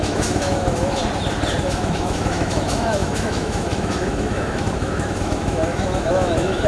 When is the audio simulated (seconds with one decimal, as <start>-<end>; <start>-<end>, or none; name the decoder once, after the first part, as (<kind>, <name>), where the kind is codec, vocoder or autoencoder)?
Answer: 0.0-1.0 (autoencoder, DAC-VAE); 1.6-6.7